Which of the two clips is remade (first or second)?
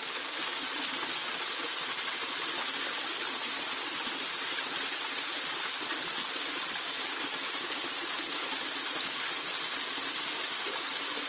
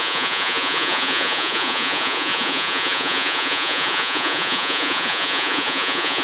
second